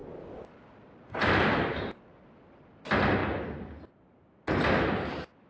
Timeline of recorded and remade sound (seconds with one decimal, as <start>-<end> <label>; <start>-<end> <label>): 0.0-5.5 recorded